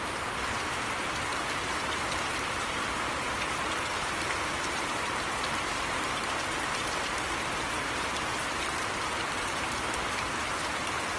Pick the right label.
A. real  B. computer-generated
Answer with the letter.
B